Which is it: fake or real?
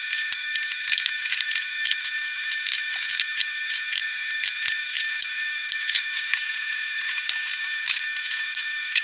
fake